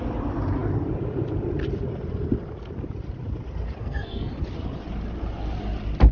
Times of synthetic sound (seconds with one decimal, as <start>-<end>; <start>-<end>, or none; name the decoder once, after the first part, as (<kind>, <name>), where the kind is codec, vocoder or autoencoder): 3.8-4.3 (codec, SNAC)